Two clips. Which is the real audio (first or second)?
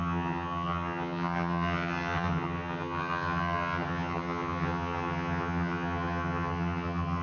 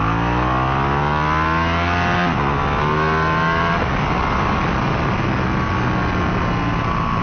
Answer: second